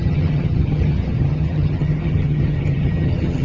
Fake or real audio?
fake